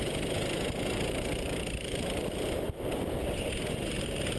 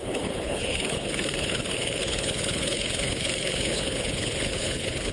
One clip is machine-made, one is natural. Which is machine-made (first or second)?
second